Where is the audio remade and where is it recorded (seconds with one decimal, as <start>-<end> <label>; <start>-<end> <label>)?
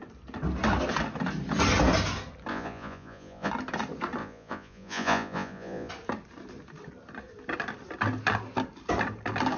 0.0-2.5 recorded; 2.5-3.5 remade; 3.5-4.2 recorded; 4.2-5.9 remade; 5.9-9.6 recorded